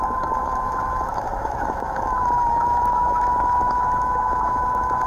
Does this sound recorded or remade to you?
remade